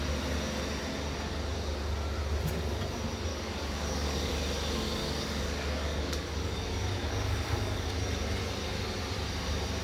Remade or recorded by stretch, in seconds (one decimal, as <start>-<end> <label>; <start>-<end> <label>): 0.0-3.3 recorded; 3.3-4.3 remade; 4.3-5.0 recorded; 5.0-7.9 remade; 7.9-9.8 recorded